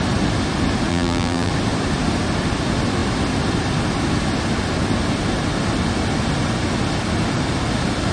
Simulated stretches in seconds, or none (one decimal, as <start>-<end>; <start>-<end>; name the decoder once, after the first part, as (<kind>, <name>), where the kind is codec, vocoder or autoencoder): 0.9-1.5 (vocoder, BigVGAN v2)